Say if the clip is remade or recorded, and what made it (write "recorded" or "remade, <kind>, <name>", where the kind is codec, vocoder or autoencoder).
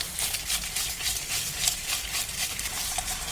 remade, vocoder, BigVGAN v2